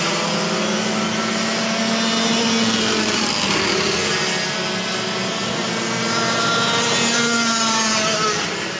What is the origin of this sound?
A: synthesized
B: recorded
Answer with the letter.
B